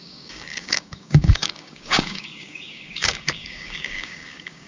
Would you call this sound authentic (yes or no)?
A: no